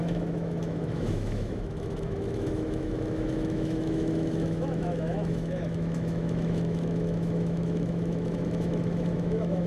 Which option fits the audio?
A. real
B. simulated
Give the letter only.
B